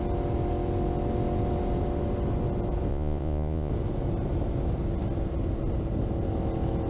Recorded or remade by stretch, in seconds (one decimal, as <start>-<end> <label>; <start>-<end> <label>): 0.0-2.9 recorded; 2.9-3.7 remade; 3.7-6.9 recorded